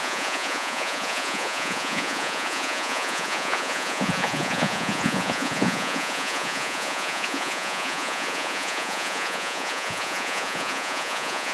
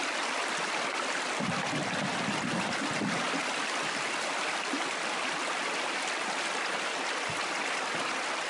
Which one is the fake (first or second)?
first